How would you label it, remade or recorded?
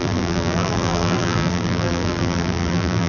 remade